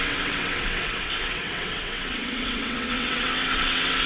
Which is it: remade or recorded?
remade